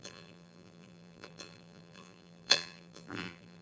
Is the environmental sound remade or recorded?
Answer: remade